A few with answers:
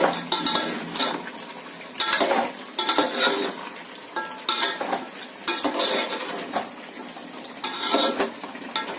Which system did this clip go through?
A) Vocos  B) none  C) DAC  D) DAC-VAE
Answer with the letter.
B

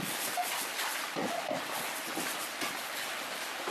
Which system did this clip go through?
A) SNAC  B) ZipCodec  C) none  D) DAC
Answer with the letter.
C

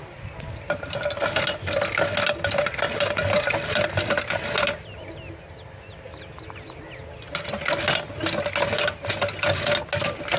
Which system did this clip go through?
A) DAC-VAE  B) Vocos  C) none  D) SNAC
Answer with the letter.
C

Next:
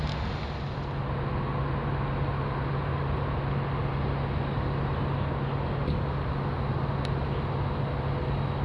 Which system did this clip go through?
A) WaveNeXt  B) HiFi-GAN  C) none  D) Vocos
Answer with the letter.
C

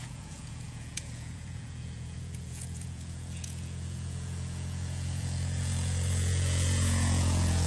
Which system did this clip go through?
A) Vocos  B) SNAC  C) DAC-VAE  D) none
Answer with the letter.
A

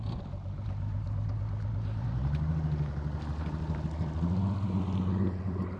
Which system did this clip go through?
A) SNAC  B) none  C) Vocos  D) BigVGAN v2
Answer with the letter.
B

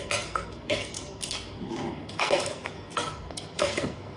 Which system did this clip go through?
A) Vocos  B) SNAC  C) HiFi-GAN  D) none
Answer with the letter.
B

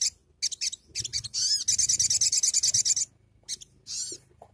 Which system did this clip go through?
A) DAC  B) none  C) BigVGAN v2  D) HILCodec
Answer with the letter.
B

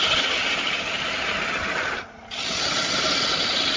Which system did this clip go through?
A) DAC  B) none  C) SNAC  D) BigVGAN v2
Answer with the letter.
B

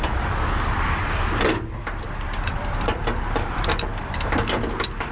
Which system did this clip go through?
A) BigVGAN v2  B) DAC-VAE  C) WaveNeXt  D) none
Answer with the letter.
A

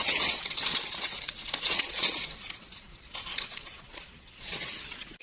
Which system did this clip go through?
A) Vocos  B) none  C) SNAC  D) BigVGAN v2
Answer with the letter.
A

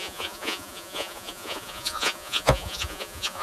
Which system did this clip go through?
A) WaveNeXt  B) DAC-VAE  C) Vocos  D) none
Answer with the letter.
C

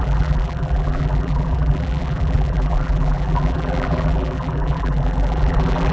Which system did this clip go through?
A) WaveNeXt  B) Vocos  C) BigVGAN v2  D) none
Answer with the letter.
C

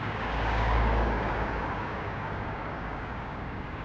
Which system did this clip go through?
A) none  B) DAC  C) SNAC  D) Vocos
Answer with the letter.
B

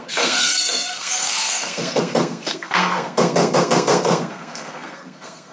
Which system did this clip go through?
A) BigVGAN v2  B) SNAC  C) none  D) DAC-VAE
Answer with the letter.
B